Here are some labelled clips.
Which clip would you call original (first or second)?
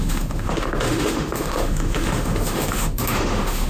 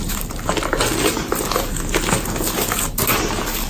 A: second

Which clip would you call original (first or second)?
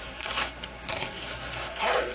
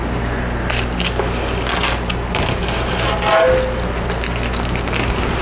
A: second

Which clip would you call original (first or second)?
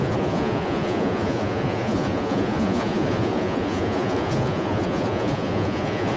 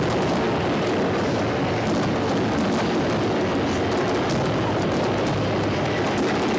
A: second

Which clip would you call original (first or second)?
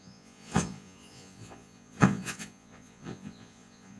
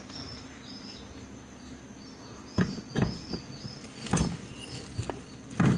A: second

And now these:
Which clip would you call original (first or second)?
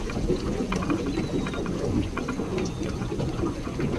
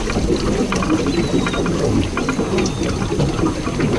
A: second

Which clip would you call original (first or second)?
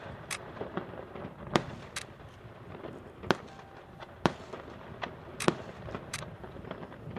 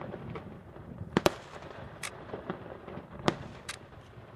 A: first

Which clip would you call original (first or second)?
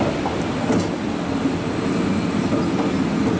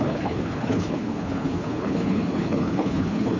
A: first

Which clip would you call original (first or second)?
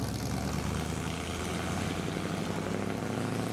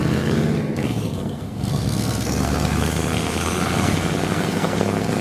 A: first